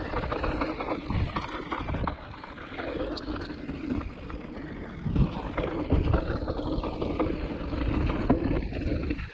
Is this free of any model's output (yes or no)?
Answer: yes